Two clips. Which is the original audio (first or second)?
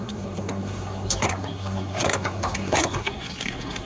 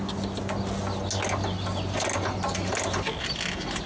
second